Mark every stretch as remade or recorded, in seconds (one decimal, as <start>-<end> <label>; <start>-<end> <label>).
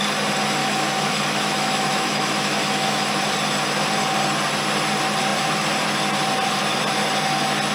0.0-0.6 recorded; 0.6-3.2 remade; 3.2-7.7 recorded